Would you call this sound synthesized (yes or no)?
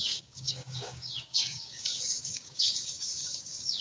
yes